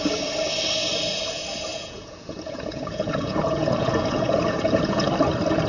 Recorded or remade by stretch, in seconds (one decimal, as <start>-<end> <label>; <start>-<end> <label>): 0.0-1.7 recorded; 1.7-5.1 remade; 5.1-5.7 recorded